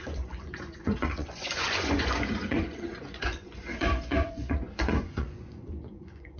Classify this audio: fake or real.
fake